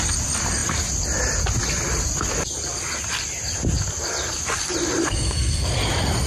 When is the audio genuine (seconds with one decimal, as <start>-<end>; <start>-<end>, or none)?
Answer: 0.0-5.0; 5.8-6.3